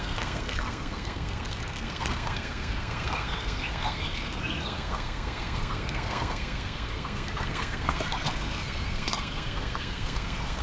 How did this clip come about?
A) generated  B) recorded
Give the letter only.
A